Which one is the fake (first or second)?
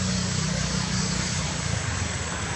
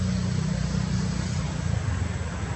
first